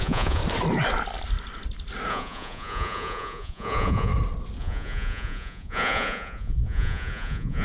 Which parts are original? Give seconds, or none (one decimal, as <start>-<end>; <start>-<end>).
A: 0.4-2.1; 4.1-4.6